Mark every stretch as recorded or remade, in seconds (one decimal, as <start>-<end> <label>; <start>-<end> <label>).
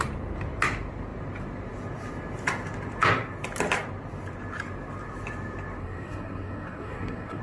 0.0-5.8 recorded; 5.8-7.4 remade